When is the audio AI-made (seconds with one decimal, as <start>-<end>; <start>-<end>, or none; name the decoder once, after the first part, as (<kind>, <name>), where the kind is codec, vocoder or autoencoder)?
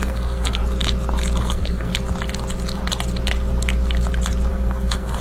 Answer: 0.0-0.6 (codec, SNAC); 1.4-1.9; 4.5-5.2